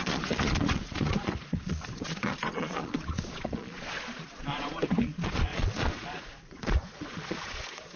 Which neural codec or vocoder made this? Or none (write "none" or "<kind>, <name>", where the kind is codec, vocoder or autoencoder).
vocoder, Vocos